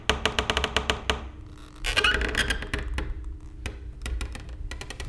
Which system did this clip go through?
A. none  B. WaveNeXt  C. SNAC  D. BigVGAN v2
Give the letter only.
A